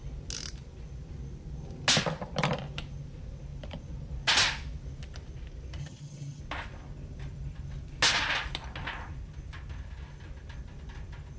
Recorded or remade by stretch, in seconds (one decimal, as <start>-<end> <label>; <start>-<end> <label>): 0.0-5.8 recorded; 5.8-6.4 remade; 6.4-11.4 recorded